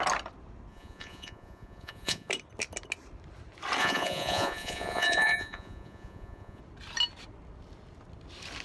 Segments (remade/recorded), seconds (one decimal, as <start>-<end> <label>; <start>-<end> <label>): 0.0-0.7 recorded; 0.7-2.3 remade; 2.3-3.8 recorded; 3.8-6.6 remade; 6.6-8.6 recorded